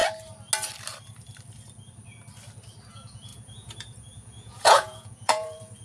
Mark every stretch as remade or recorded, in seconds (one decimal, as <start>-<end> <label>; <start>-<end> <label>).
0.0-2.9 recorded; 2.9-5.8 remade